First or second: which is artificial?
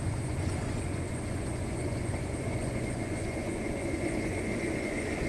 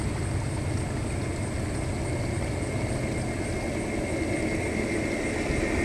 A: first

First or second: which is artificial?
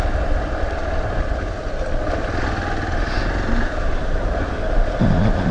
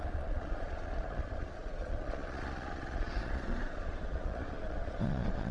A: second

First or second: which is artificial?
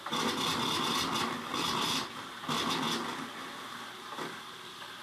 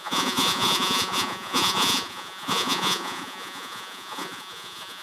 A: second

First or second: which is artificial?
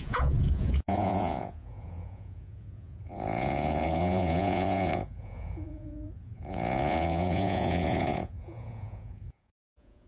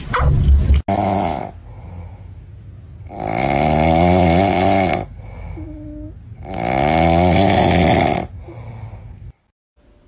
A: first